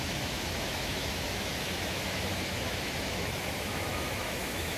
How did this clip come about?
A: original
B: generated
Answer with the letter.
B